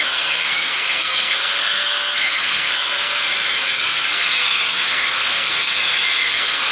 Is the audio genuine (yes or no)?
no